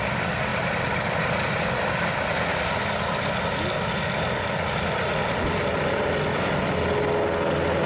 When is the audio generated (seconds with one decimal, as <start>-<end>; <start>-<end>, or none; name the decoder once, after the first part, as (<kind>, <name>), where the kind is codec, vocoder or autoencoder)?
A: none